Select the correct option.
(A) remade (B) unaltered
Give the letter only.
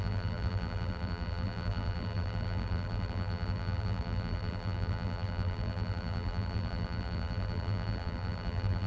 A